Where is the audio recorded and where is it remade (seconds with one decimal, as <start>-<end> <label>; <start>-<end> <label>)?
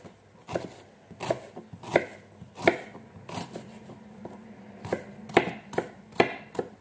0.0-6.8 recorded